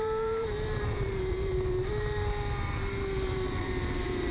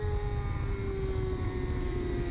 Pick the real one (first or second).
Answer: second